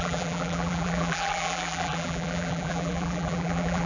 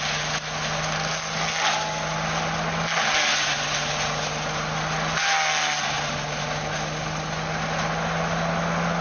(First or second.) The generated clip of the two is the first